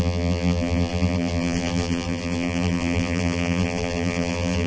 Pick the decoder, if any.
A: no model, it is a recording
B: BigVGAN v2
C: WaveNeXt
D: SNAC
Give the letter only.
B